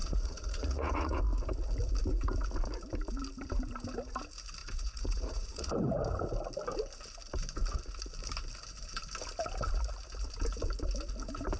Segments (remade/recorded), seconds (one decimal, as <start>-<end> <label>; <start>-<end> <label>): 0.0-1.2 remade; 1.2-4.6 recorded; 4.6-5.7 remade; 5.7-11.6 recorded